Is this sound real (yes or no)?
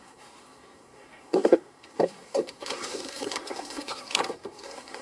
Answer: no